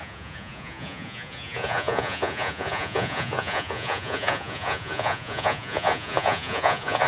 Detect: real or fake fake